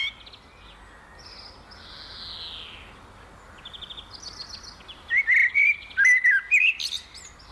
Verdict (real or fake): real